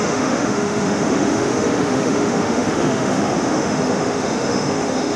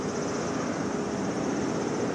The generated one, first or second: first